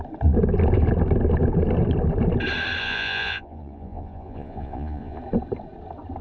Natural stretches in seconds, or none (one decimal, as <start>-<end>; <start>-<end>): 0.0-2.8; 5.2-6.2